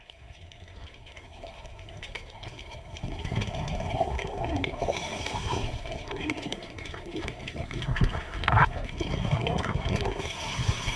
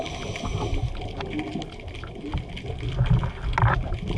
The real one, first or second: second